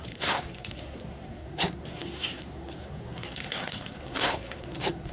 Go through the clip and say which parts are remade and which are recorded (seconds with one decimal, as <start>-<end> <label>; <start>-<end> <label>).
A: 0.0-5.1 remade